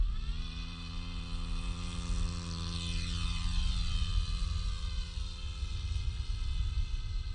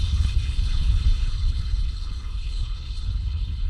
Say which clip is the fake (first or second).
second